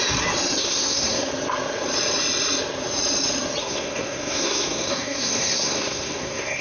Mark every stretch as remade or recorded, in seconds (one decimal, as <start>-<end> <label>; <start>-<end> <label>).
0.0-0.6 recorded; 0.6-1.3 remade; 1.3-3.6 recorded; 3.6-6.6 remade

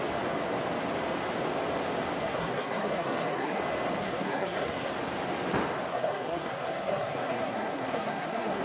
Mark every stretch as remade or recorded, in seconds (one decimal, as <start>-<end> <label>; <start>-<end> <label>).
0.0-2.2 recorded; 2.2-3.6 remade; 3.6-4.0 recorded; 4.0-4.9 remade; 4.9-5.9 recorded; 5.9-8.6 remade

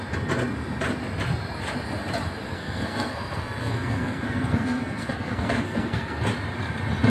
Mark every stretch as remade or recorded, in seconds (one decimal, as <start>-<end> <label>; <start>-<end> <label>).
0.0-2.5 recorded; 2.5-6.2 remade; 6.2-7.1 recorded

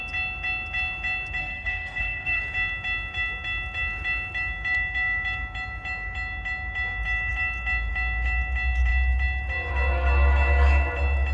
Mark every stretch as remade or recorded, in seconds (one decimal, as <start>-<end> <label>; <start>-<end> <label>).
0.0-1.4 recorded; 1.4-2.4 remade; 2.4-11.3 recorded

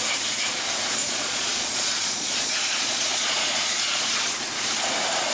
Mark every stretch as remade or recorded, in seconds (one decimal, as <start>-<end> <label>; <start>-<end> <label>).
0.0-1.0 recorded; 1.0-4.0 remade; 4.0-5.3 recorded

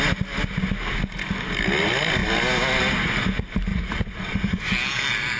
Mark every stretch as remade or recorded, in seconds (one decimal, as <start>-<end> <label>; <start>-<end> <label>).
0.0-3.7 recorded; 3.7-4.7 remade; 4.7-5.4 recorded